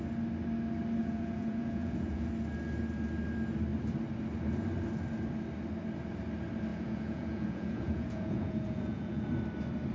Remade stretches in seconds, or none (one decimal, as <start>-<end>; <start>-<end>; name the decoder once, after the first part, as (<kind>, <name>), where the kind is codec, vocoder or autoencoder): 1.0-2.3 (vocoder, Vocos); 6.7-9.3